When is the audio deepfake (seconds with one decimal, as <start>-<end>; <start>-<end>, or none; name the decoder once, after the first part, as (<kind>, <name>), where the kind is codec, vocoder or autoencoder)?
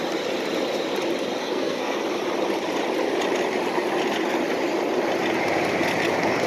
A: 1.4-2.0 (codec, SNAC)